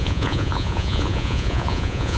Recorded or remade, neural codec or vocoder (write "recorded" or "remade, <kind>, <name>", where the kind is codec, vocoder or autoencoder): remade, vocoder, Vocos